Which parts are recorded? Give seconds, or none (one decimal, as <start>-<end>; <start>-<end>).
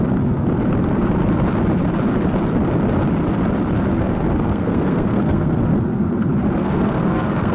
0.0-3.9; 5.6-6.6